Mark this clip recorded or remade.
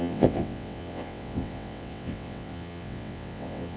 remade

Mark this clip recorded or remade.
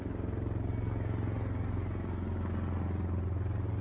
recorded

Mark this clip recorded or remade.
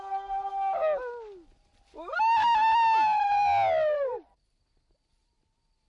recorded